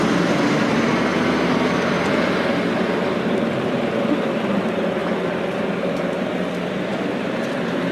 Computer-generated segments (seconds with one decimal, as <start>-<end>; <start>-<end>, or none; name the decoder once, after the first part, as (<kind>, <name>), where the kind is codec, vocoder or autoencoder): 5.0-5.6 (vocoder, BigVGAN v2); 6.9-7.5